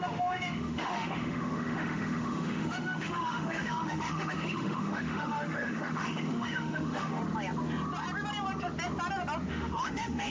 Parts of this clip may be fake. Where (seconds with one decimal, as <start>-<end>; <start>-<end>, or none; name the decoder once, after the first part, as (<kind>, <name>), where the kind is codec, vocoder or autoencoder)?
0.0-7.2 (autoencoder, DAC-VAE); 9.5-10.3